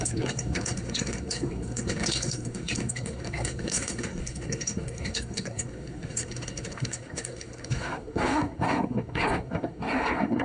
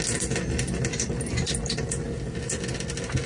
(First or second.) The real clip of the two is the second